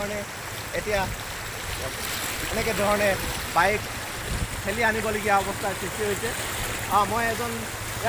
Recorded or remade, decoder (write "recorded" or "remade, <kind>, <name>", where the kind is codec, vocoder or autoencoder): recorded